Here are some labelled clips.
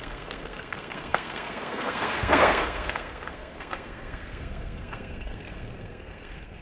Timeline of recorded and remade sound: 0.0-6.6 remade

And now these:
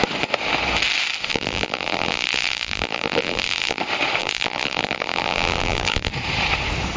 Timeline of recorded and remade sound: 0.0-1.3 recorded; 1.3-3.8 remade; 3.8-4.2 recorded; 4.2-6.1 remade; 6.1-7.0 recorded

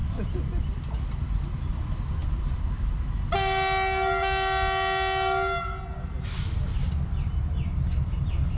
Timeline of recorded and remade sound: 0.0-8.6 recorded